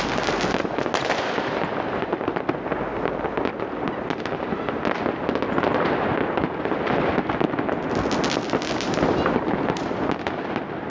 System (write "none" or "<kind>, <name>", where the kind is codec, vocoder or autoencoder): none